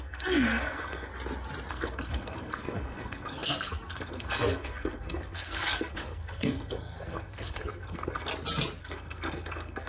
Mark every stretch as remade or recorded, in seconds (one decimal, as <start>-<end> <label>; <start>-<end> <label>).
0.0-1.1 remade; 1.1-1.7 recorded; 1.7-8.3 remade; 8.3-8.8 recorded; 8.8-9.9 remade